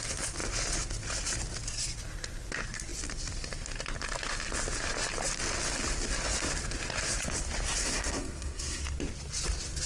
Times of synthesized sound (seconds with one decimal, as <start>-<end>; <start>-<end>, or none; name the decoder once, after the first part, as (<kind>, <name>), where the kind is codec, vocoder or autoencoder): 7.8-8.8 (codec, SNAC)